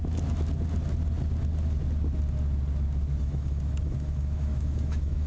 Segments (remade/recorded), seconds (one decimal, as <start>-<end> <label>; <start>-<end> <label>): 0.0-3.2 recorded; 3.2-5.3 remade